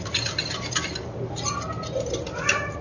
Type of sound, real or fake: real